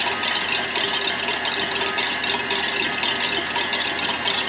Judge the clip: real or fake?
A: real